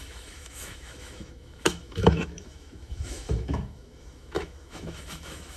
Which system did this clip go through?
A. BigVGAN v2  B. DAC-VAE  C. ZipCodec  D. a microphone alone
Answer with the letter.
B